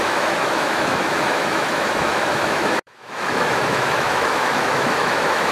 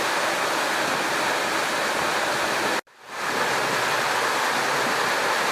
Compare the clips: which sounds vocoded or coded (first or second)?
first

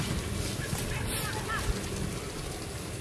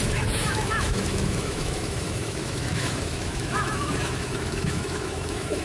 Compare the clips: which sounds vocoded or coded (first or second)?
second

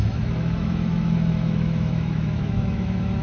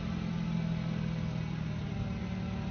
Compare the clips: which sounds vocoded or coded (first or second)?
first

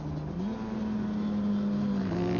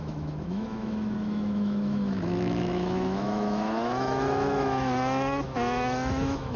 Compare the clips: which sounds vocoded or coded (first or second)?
second